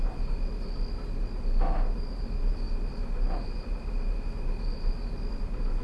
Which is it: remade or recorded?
recorded